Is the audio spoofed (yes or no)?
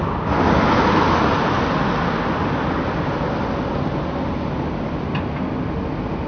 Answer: no